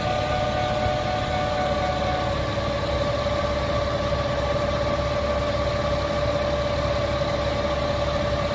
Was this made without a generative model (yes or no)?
yes